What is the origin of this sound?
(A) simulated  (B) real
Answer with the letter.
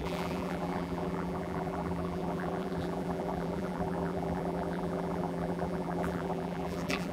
A